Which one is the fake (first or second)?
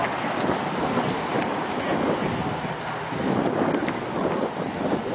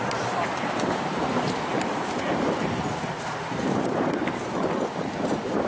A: second